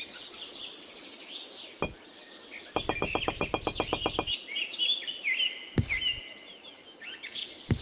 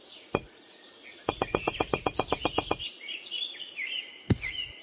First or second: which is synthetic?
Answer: second